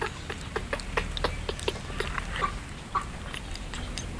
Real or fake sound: real